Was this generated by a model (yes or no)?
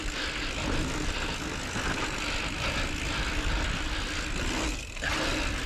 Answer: no